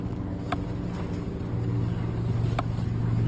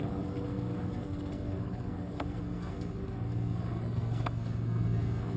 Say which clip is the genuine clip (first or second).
first